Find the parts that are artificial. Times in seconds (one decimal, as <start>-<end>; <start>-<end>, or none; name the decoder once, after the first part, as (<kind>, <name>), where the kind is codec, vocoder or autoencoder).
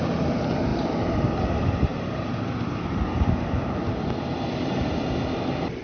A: 0.7-1.3 (vocoder, BigVGAN v2); 1.9-5.8